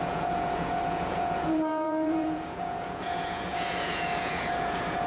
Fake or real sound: fake